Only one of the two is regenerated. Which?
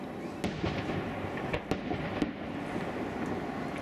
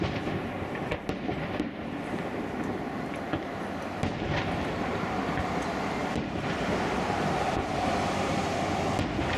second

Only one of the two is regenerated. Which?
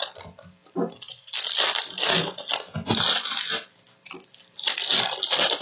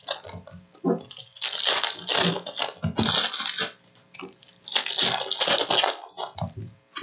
first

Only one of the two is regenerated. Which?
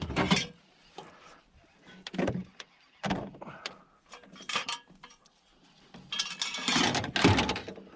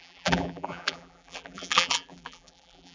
second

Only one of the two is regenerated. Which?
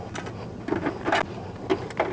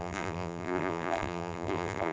second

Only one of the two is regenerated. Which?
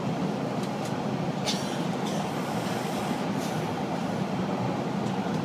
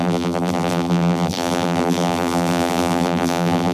second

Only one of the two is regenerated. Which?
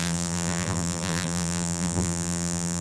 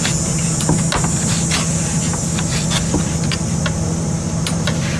first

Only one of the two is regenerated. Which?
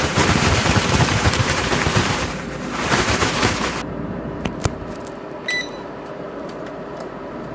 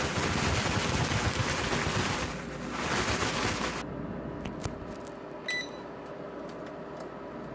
first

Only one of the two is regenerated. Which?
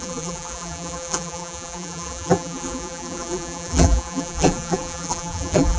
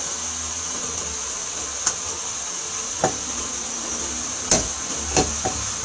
first